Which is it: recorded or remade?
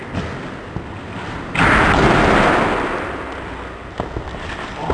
recorded